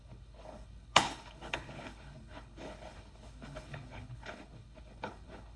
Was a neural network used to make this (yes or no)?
yes